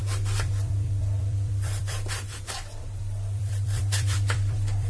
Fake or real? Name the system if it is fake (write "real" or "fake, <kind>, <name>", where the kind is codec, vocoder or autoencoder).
fake, vocoder, BigVGAN v2